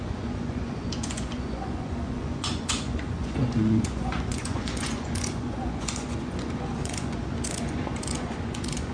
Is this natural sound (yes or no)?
no